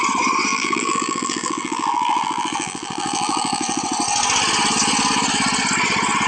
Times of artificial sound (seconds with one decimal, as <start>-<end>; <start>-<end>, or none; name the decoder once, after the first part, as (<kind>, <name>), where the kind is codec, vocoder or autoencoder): 0.5-3.8 (vocoder, BigVGAN v2)